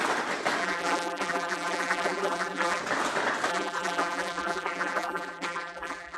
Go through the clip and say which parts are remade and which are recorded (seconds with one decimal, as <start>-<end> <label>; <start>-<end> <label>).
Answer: 0.0-0.6 recorded; 0.6-2.8 remade; 2.8-3.5 recorded; 3.5-6.2 remade